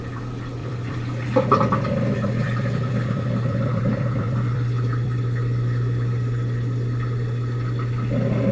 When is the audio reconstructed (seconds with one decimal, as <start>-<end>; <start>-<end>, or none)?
0.6-5.2